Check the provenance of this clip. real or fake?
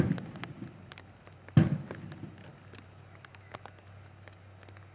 real